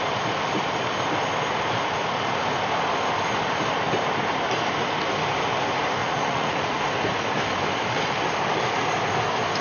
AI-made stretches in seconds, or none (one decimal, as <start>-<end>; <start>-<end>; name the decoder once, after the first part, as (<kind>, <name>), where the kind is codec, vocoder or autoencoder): 6.0-6.8 (vocoder, Vocos)